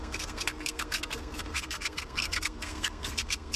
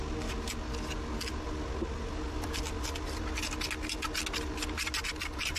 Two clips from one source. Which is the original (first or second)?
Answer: second